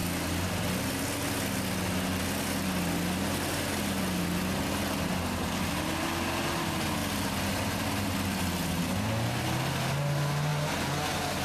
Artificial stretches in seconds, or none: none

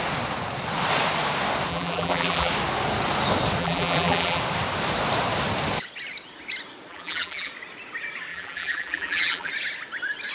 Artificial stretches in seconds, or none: 1.7-2.5 (vocoder, BigVGAN v2); 3.6-4.4; 6.9-7.5; 8.3-9.5